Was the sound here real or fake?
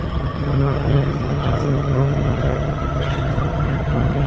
fake